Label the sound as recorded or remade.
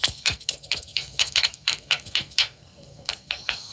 remade